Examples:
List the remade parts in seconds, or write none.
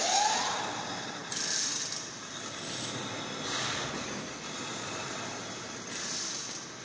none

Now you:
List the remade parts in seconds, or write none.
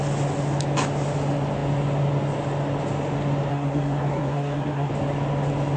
3.5-4.9 (codec, SNAC)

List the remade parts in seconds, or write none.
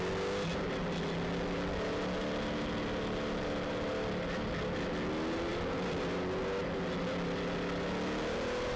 none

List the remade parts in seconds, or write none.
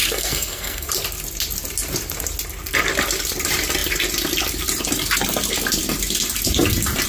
0.0-0.9 (codec, SNAC)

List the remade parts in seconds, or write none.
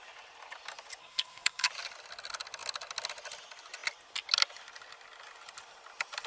1.0-1.7 (codec, SNAC)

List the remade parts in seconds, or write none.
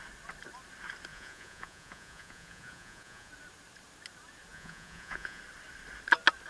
1.1-3.3 (vocoder, Vocos); 4.5-5.4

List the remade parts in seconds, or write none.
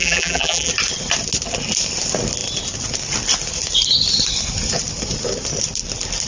0.0-0.7 (vocoder, BigVGAN v2)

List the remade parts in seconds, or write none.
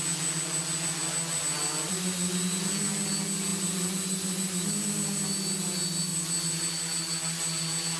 none